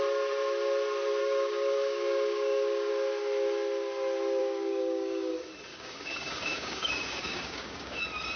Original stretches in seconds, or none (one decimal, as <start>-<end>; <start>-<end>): 0.0-1.2; 2.9-4.4; 5.3-5.7; 8.0-8.4